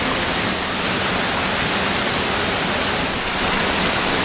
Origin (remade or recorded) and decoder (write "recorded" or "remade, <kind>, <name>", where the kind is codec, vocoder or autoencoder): recorded